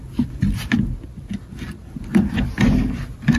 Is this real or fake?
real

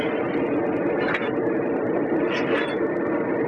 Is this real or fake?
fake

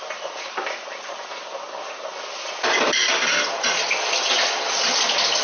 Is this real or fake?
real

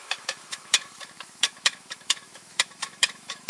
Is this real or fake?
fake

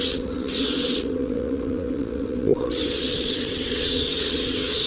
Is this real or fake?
fake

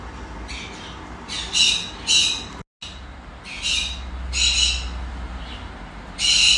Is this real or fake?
real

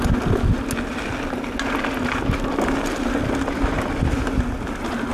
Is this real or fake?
real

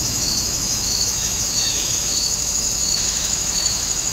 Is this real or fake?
fake